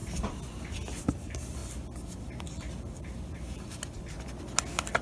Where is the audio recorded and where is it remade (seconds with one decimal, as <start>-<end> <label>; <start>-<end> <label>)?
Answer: 0.0-1.0 remade; 1.0-1.6 recorded; 1.6-4.4 remade; 4.4-5.0 recorded